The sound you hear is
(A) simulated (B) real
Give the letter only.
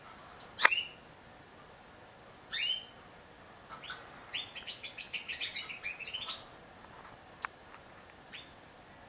B